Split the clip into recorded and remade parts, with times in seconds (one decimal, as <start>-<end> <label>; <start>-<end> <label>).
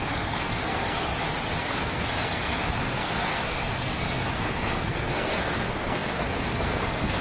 0.0-1.1 remade; 1.1-1.6 recorded; 1.6-7.2 remade